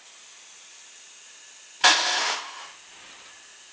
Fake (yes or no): no